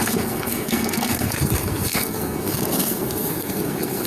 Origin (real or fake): fake